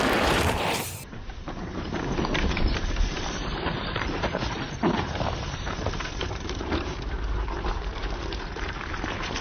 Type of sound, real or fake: fake